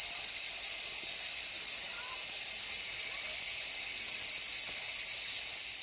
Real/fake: real